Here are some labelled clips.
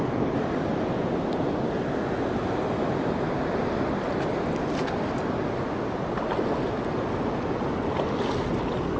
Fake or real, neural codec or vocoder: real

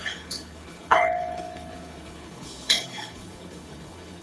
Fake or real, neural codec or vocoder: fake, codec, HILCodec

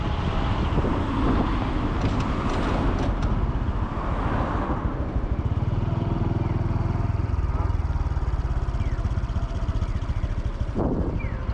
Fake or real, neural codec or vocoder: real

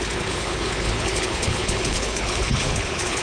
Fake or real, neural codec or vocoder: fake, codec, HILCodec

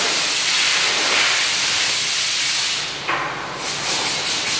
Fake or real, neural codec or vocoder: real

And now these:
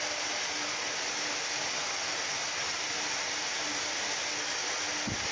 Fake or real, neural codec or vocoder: real